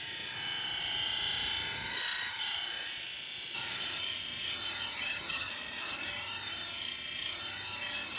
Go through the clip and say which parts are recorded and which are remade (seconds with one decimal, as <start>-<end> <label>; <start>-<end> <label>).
0.0-4.9 recorded; 4.9-5.5 remade; 5.5-8.2 recorded